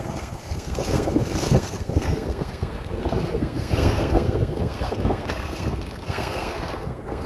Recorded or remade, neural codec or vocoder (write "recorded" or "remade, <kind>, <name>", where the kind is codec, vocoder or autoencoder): remade, codec, SNAC